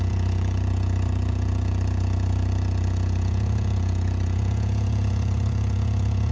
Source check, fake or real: fake